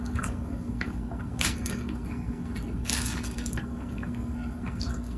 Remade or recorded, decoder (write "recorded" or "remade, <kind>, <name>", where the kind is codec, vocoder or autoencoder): remade, codec, SNAC